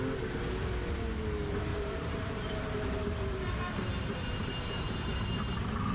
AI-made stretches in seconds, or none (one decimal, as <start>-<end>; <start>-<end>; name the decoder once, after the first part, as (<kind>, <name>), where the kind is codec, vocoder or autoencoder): 1.7-5.2 (vocoder, BigVGAN v2)